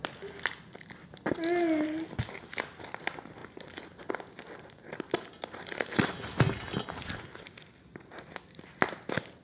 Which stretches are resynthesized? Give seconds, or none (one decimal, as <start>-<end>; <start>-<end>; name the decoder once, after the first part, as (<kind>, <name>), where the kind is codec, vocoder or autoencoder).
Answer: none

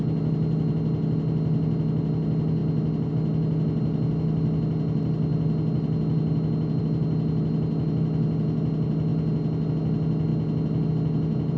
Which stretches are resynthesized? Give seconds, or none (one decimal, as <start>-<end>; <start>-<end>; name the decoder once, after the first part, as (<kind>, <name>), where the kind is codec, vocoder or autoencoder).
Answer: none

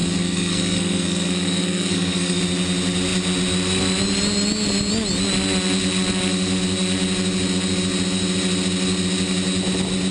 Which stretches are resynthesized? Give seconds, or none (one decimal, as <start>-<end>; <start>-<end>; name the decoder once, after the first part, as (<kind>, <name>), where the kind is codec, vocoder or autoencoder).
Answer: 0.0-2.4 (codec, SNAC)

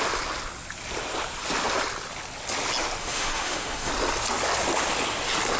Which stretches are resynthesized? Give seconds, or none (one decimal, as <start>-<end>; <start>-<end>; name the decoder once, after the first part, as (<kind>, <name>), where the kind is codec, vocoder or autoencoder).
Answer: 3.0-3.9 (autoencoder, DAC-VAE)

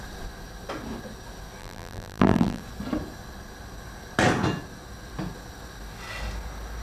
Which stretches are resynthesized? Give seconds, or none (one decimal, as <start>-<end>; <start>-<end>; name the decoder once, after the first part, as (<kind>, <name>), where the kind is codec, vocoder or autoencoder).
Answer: 1.6-2.6 (vocoder, BigVGAN v2)

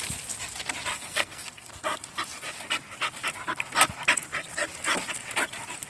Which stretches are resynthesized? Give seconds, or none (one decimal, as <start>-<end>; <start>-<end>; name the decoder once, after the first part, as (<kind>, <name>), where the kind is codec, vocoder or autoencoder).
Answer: 0.9-1.7 (codec, SNAC)

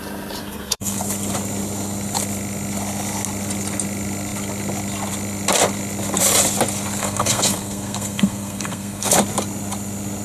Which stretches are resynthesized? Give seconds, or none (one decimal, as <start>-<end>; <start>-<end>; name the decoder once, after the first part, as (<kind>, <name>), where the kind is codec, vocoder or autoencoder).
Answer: 0.4-1.0 (codec, SNAC); 7.0-9.1

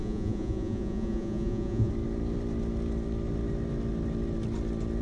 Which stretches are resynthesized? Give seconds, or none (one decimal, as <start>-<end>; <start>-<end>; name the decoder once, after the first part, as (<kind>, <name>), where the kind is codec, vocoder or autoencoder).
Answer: 0.0-1.9 (vocoder, Vocos)